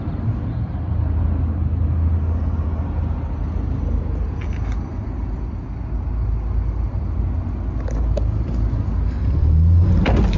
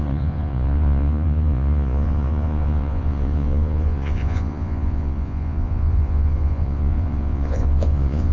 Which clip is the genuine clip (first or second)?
first